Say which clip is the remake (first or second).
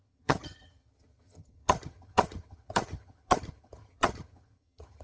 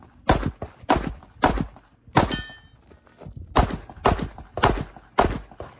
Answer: first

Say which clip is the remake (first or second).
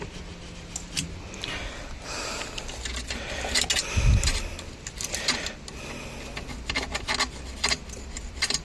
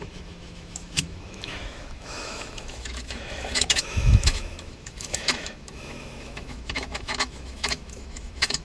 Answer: second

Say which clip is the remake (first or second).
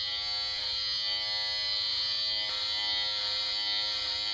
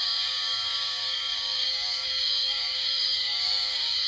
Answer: second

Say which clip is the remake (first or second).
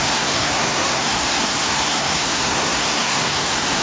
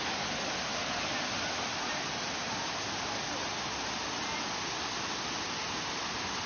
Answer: first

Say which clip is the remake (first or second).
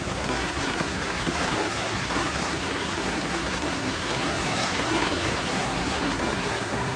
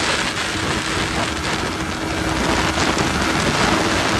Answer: first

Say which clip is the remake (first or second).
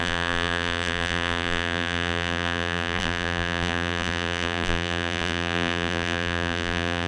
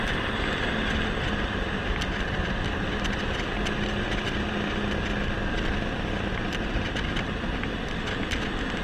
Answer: first